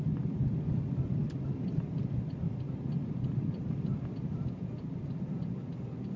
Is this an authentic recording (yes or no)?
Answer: yes